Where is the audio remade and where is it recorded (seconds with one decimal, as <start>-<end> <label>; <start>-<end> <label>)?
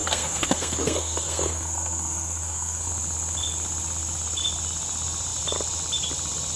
0.0-2.9 remade; 2.9-6.6 recorded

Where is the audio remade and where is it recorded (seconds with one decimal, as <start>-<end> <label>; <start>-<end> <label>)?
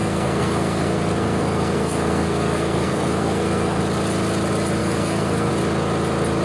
0.0-3.8 remade; 3.8-4.8 recorded; 4.8-5.5 remade; 5.5-6.4 recorded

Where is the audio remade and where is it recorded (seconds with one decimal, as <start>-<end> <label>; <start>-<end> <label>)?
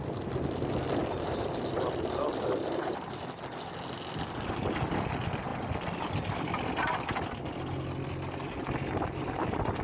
0.0-9.8 recorded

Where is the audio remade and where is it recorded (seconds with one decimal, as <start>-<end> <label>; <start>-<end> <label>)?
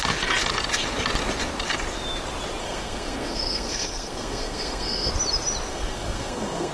0.0-2.6 recorded; 2.6-5.1 remade; 5.1-5.7 recorded; 5.7-6.7 remade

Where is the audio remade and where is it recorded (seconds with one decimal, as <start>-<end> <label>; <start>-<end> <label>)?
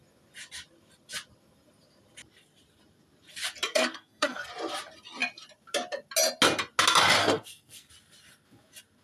0.0-3.7 recorded; 3.7-4.5 remade; 4.5-7.2 recorded; 7.2-7.9 remade; 7.9-9.0 recorded